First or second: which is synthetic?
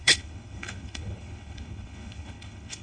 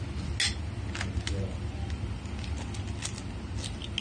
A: first